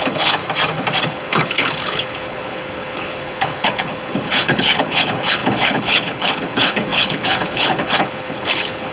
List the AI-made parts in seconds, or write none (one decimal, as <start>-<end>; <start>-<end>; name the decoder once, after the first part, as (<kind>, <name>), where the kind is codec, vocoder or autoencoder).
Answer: 0.0-0.4 (codec, HILCodec); 1.0-8.9